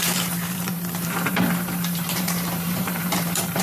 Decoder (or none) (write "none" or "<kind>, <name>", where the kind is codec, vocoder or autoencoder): vocoder, BigVGAN v2